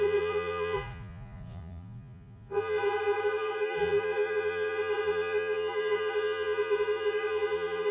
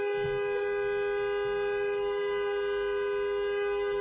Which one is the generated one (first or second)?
first